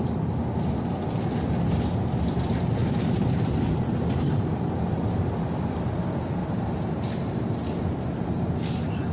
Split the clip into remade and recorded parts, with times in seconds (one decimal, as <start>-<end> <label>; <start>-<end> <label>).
0.0-2.8 recorded; 2.8-5.8 remade; 5.8-6.4 recorded; 6.4-8.3 remade; 8.3-9.1 recorded